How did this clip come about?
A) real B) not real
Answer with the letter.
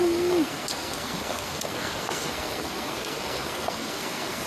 B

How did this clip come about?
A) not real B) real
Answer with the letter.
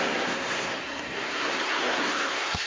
A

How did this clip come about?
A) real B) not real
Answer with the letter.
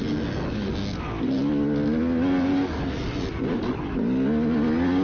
A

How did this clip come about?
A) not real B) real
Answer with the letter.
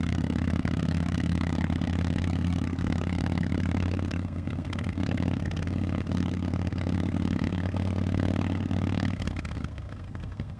A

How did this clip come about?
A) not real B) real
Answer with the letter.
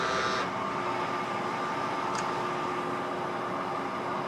B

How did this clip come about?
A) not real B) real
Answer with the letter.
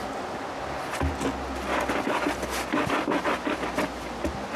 B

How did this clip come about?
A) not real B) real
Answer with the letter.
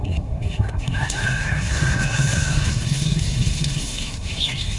A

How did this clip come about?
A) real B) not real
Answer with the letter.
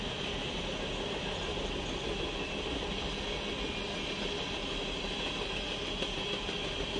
A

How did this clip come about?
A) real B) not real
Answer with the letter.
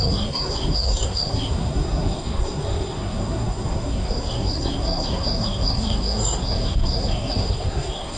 B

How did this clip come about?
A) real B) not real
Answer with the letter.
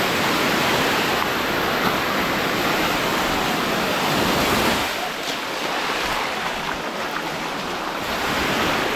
A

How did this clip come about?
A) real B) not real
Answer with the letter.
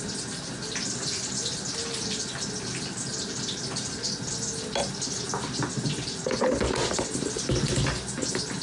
A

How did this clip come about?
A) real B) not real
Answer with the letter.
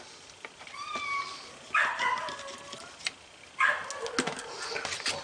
A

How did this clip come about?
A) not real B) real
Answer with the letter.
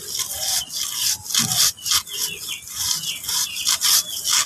B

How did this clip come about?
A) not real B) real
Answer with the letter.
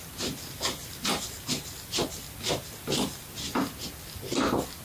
B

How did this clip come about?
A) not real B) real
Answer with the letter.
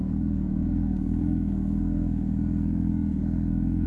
A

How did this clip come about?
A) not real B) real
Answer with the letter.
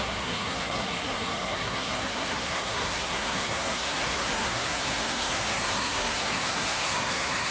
A